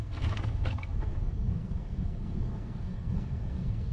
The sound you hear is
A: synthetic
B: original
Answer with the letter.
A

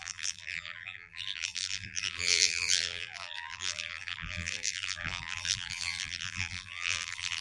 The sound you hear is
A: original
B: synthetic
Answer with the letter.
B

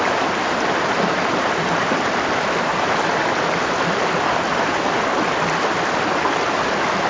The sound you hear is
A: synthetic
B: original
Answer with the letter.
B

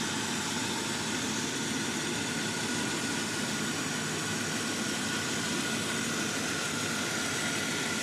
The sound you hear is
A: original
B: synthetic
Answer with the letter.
A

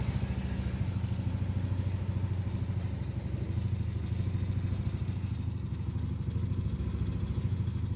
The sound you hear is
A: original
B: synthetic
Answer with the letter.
A